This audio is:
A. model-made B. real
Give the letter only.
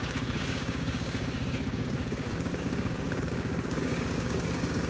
A